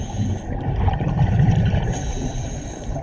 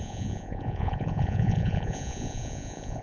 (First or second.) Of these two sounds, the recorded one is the first